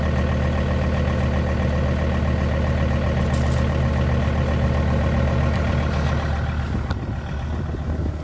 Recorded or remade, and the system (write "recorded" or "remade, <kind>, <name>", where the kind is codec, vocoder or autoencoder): recorded